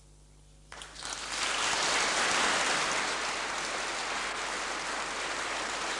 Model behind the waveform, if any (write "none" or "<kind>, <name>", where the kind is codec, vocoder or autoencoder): none